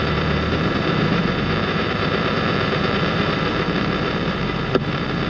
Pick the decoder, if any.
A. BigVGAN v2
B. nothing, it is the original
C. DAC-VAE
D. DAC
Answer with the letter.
A